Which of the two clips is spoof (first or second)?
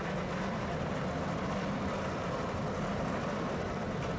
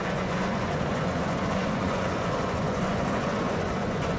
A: second